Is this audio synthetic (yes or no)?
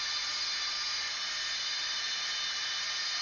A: no